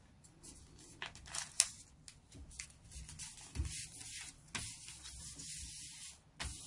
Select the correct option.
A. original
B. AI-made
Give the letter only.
A